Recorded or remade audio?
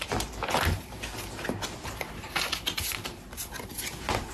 recorded